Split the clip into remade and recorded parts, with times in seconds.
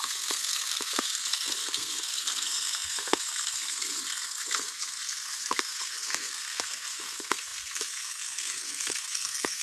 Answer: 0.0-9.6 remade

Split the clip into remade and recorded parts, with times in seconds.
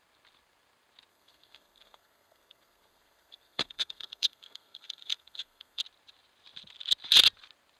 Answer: 0.0-1.1 recorded; 1.1-5.8 remade; 5.8-7.8 recorded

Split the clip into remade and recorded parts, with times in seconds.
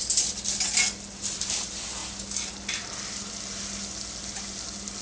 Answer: 0.0-5.0 recorded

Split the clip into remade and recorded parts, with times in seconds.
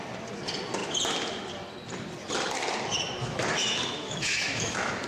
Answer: 0.0-3.2 recorded; 3.2-5.1 remade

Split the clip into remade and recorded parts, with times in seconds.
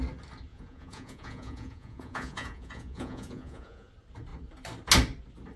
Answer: 0.0-0.5 recorded; 0.5-3.9 remade; 3.9-5.6 recorded